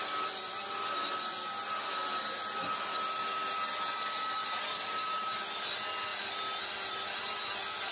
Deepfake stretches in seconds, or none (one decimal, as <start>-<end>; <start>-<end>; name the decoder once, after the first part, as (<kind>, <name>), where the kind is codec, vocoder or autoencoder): none